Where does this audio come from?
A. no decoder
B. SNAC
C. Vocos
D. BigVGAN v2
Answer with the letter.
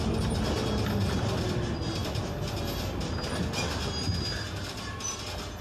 A